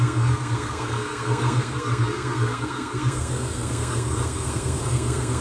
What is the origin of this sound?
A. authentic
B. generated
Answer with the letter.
B